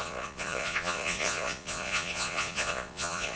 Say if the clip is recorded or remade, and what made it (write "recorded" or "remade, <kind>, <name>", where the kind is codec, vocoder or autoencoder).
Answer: remade, vocoder, Vocos